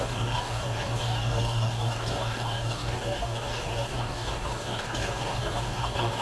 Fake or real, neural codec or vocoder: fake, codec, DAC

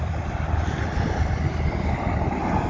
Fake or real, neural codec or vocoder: real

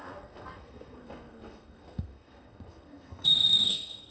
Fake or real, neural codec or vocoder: fake, codec, SNAC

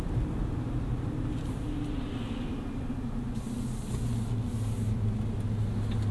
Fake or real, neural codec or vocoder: real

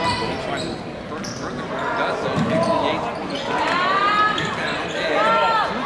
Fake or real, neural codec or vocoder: real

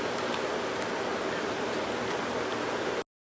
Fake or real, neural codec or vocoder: real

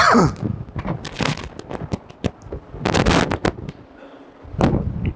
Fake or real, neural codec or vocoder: real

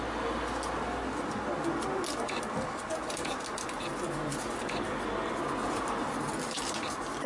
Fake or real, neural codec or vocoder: real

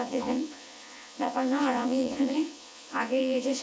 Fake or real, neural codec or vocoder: fake, vocoder, Vocos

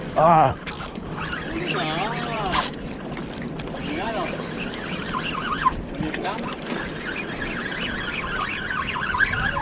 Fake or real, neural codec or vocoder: real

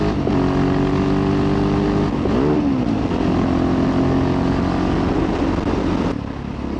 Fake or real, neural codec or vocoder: real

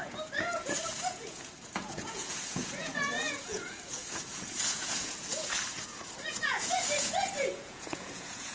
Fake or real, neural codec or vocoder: fake, vocoder, Vocos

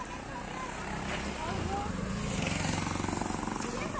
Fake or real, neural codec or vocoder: real